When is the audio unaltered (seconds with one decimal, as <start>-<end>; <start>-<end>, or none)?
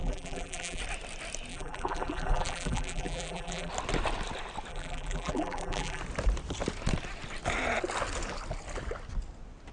0.8-1.5; 3.7-4.7; 6.0-9.7